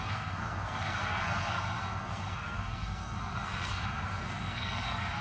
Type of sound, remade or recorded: remade